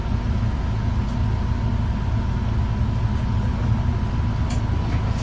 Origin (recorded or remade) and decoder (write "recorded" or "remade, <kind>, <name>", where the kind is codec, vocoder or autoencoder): recorded